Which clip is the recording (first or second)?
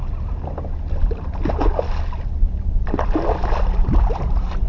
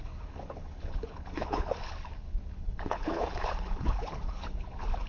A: first